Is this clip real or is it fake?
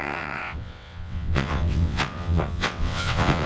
fake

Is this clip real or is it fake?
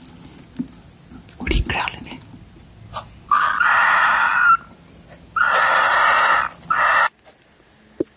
real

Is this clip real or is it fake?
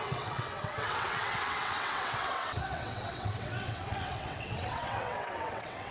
fake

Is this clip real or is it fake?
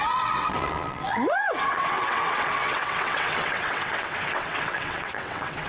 fake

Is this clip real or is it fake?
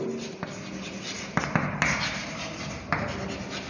real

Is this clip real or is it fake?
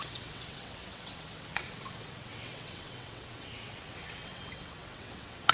fake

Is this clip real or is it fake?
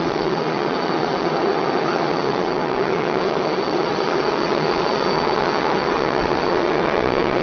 fake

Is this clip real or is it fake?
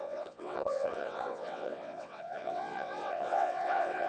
fake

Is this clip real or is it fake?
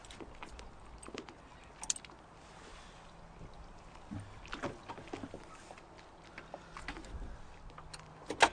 real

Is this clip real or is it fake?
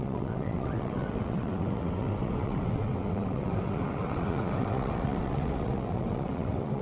fake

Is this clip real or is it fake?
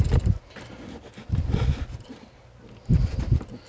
real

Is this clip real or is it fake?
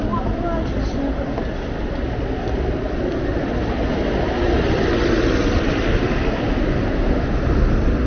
real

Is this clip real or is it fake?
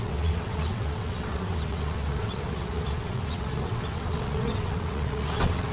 fake